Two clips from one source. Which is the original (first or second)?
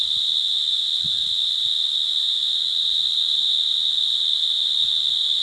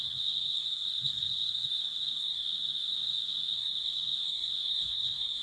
first